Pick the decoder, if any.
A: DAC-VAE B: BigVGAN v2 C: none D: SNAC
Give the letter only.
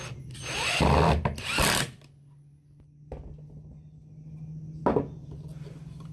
C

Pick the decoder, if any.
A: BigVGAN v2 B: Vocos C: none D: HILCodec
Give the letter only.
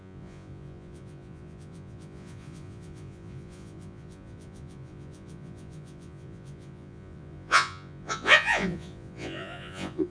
B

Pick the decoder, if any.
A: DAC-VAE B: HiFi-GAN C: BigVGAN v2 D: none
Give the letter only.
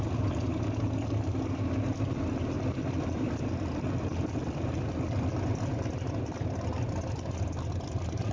D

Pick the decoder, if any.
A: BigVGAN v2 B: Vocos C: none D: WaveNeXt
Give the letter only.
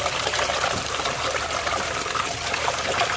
C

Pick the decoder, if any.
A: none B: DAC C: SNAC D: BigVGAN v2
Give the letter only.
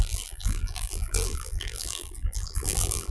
D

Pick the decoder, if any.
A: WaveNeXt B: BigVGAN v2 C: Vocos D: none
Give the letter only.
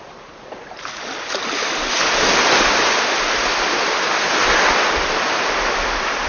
D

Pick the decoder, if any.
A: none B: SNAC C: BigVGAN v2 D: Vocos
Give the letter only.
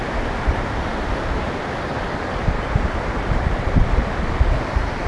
C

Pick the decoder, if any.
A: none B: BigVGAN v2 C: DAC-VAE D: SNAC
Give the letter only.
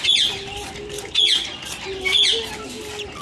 A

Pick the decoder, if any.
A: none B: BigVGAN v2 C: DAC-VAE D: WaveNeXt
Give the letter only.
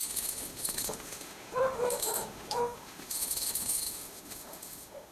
C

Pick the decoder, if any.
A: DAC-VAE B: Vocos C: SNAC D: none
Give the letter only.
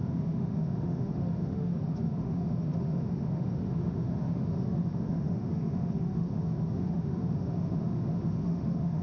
A